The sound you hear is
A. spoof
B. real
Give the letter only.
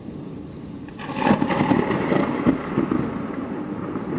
B